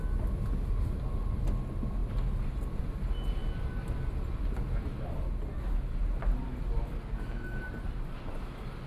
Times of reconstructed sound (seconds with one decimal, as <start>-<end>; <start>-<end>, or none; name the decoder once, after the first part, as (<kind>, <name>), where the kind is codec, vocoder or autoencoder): none